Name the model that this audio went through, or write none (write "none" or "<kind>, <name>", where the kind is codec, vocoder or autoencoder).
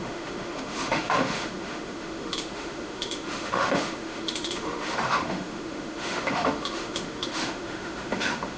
autoencoder, DAC-VAE